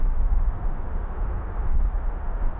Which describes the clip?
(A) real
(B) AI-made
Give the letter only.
B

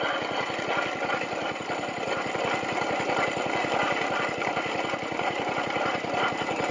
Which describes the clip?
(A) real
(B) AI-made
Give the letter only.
A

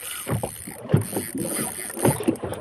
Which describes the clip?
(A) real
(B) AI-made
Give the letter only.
A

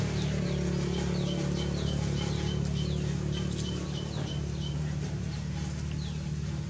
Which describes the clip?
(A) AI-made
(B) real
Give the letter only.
B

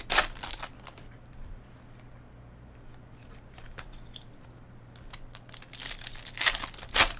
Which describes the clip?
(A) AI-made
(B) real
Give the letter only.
B